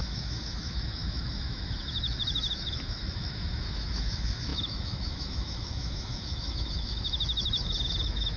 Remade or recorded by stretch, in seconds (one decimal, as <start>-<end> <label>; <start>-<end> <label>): 0.0-8.4 remade